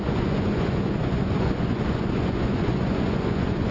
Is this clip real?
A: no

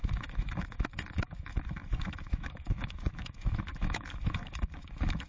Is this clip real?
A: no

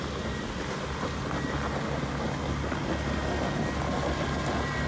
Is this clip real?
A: yes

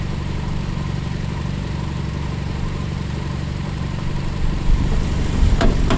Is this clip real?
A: no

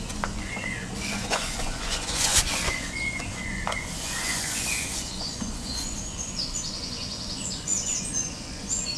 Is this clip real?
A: no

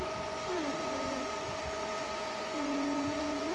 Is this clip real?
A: no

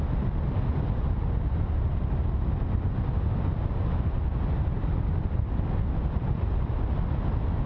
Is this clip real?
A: yes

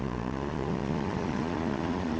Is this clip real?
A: no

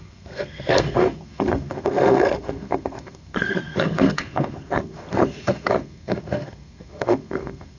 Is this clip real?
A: no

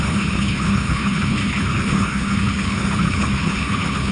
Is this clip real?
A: no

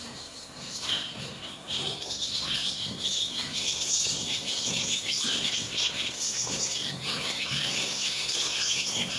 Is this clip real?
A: no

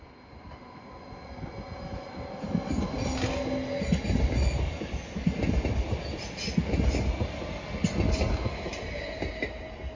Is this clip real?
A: yes